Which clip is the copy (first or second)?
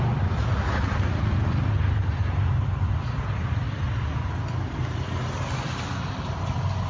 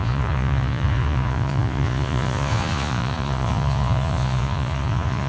second